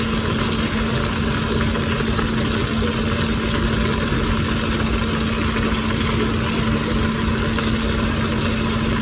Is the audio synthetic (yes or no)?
no